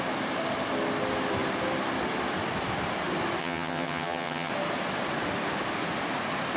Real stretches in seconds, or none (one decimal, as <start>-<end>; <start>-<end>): 0.0-3.4; 4.5-6.6